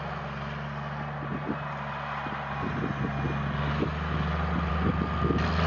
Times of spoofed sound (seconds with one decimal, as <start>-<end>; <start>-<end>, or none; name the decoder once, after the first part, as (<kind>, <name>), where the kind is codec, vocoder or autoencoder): none